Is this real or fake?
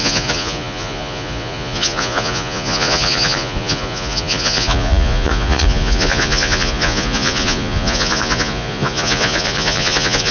fake